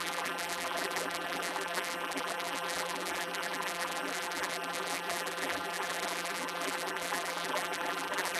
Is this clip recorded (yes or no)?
no